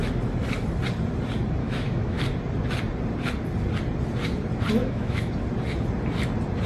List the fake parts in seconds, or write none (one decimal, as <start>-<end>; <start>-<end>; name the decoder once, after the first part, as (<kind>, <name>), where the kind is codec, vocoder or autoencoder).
1.6-2.2 (autoencoder, DAC-VAE); 4.8-5.3